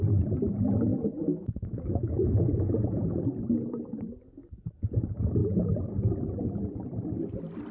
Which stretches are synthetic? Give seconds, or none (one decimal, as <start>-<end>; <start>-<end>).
0.9-2.5